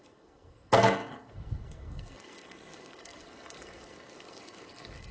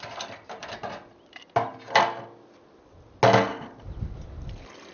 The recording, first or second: second